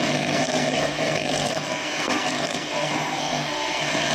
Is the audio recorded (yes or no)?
no